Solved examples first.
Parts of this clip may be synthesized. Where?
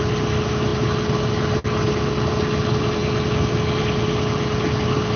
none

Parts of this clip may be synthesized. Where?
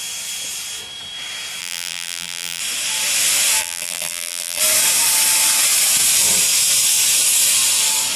1.6-2.6 (vocoder, BigVGAN v2); 3.6-4.6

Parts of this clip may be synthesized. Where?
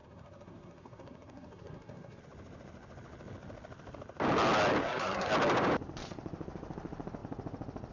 0.0-2.2 (codec, SNAC); 4.8-5.3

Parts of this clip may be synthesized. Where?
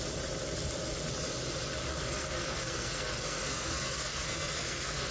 1.9-5.1 (codec, SNAC)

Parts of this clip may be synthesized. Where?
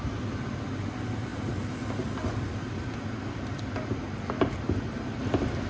none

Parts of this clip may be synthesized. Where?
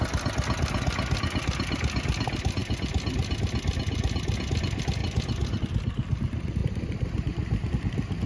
5.0-5.6 (vocoder, BigVGAN v2); 6.6-7.7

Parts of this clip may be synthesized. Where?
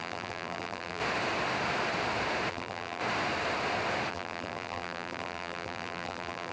0.0-1.0 (vocoder, BigVGAN v2); 2.5-3.0; 4.1-6.5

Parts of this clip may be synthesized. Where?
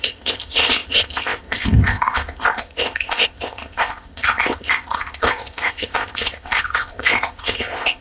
0.0-8.0 (codec, ZipCodec)